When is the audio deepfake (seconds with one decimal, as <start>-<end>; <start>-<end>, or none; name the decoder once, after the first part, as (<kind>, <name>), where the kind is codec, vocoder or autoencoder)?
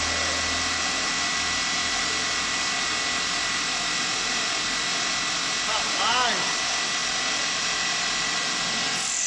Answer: none